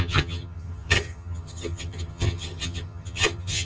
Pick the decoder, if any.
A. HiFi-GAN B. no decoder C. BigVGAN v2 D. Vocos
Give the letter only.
A